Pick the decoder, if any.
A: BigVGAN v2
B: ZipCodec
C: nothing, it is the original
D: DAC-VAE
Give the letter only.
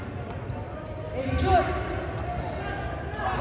C